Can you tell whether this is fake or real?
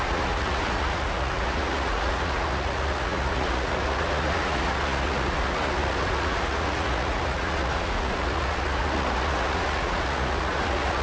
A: fake